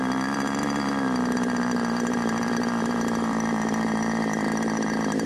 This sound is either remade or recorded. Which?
remade